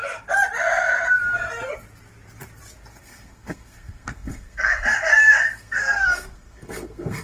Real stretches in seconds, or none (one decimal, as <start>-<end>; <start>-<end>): 0.0-3.0